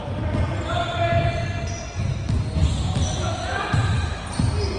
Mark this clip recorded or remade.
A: recorded